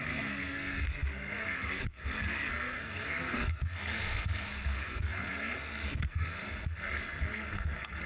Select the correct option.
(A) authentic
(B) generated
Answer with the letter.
B